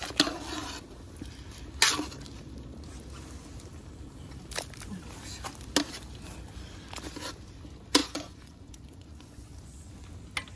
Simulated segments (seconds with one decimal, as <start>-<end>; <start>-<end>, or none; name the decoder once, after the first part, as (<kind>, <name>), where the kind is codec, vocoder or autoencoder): 8.0-9.9 (vocoder, Vocos)